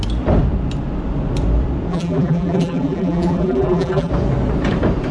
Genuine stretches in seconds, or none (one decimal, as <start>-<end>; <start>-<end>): 0.0-1.9; 4.1-5.1